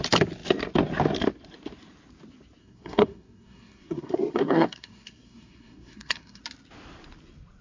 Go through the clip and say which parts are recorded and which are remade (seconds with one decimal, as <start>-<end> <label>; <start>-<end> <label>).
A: 0.0-2.6 recorded; 2.6-6.4 remade; 6.4-7.6 recorded